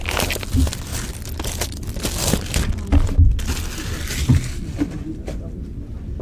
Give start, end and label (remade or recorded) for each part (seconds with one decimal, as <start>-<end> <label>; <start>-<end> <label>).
0.0-6.2 recorded